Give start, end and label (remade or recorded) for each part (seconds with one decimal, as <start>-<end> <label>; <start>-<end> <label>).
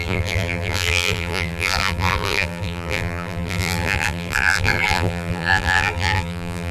0.0-6.7 remade